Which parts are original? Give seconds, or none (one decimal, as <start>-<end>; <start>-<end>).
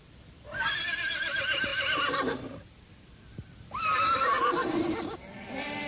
none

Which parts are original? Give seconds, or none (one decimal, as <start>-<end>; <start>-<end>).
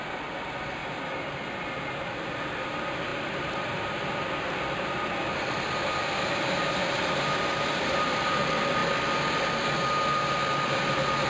0.0-3.1; 3.9-7.5; 8.4-11.3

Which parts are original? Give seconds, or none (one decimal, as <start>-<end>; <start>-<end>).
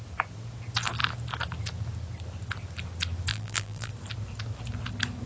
0.0-3.3; 3.9-5.3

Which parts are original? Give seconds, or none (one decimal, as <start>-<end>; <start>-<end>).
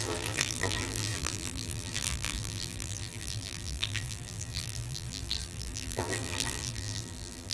none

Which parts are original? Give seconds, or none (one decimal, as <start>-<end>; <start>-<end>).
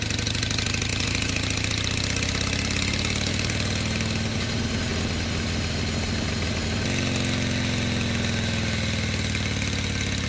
0.0-10.3